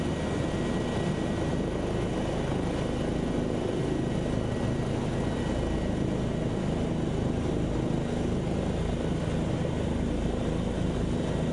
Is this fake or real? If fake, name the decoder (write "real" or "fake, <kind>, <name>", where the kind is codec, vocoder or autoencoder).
real